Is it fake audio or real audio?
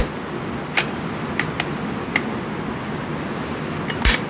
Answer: real